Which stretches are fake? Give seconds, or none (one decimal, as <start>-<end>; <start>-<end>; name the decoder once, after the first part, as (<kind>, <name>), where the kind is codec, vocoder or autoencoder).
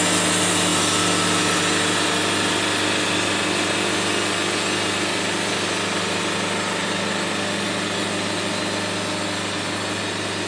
none